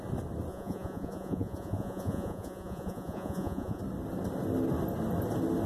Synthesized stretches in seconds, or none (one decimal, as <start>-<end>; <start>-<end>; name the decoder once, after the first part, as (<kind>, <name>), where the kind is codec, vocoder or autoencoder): 0.5-3.8 (vocoder, Vocos)